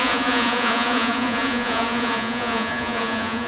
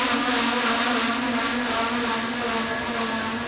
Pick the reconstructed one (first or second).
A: first